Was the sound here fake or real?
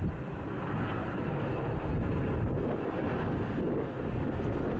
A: real